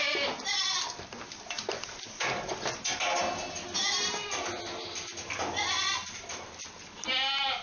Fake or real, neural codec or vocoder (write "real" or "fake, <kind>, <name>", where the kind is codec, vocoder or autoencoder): real